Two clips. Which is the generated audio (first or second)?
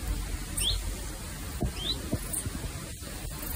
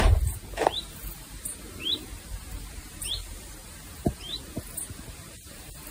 second